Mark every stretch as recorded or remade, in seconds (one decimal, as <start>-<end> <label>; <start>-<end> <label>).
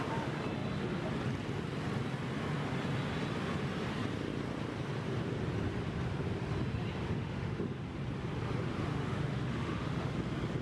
0.0-7.2 recorded; 7.2-7.8 remade; 7.8-8.9 recorded; 8.9-10.1 remade; 10.1-10.6 recorded